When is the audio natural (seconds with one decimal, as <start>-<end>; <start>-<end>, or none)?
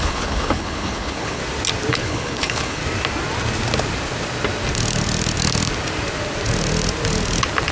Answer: 1.4-1.9; 2.8-7.7